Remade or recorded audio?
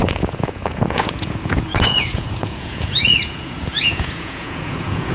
remade